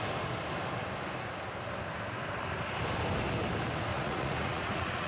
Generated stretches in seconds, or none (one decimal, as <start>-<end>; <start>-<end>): 3.9-5.1